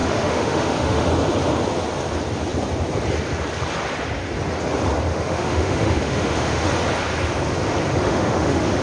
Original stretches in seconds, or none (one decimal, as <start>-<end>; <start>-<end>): 1.1-5.1; 6.7-8.0